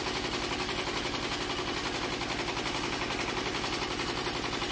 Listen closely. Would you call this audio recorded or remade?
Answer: recorded